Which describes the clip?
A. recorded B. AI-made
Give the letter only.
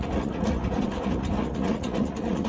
B